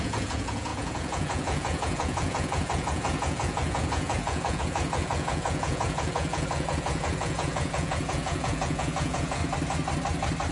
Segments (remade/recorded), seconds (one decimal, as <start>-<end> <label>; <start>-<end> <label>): 0.0-9.4 remade; 9.4-10.5 recorded